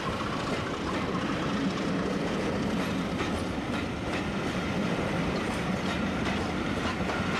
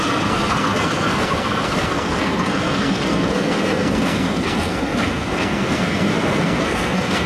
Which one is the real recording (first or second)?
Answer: first